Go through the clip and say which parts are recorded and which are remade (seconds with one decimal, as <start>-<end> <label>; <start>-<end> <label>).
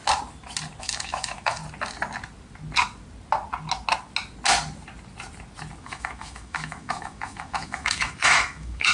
0.0-0.8 recorded; 0.8-1.6 remade; 1.6-5.8 recorded; 5.8-8.9 remade